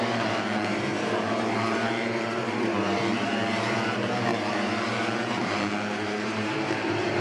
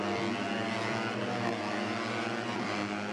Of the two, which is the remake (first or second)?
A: first